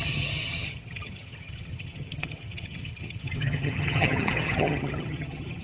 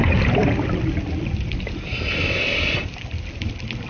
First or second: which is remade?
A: first